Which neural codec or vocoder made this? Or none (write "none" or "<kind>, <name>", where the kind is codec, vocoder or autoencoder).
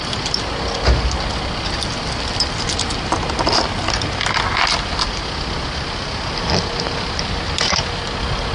none